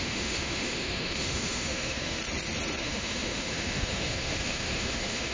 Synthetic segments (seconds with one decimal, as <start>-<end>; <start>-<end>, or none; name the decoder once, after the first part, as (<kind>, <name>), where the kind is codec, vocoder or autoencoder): 0.0-2.2 (autoencoder, DAC-VAE); 2.8-5.3